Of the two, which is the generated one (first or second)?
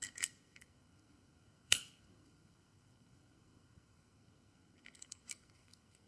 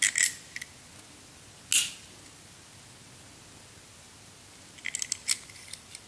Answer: first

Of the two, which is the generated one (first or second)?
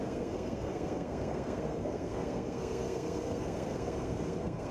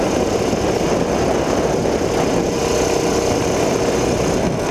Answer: first